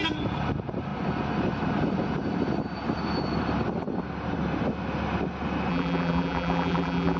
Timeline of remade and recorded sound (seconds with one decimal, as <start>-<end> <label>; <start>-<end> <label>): 0.0-5.7 recorded; 5.7-7.2 remade